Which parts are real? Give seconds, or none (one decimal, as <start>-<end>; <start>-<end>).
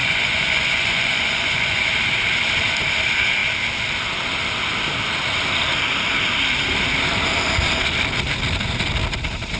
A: 1.9-9.6